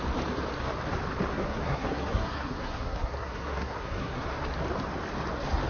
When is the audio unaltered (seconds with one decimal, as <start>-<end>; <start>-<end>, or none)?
0.0-1.3; 4.4-5.7